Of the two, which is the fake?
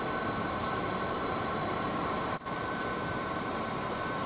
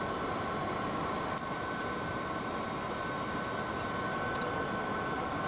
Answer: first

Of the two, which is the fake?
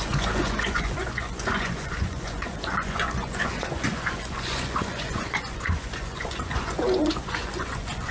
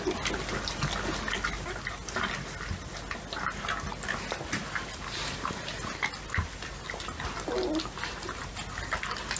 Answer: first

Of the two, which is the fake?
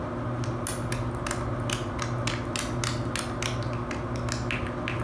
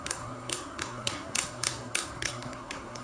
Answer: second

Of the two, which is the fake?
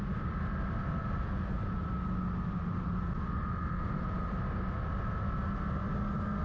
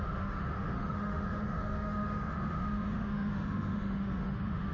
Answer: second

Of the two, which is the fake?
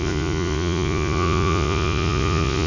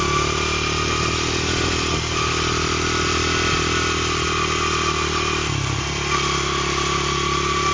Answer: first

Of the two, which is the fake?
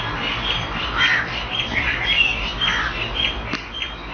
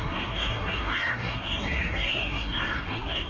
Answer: second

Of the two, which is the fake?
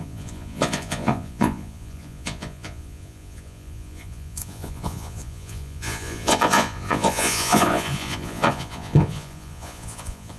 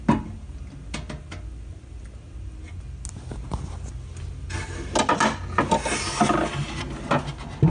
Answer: first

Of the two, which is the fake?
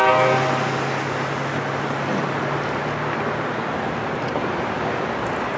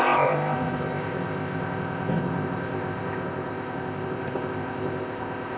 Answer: second